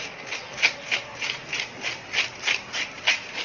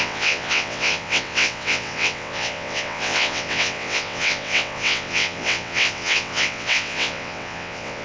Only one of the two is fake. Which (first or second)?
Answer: second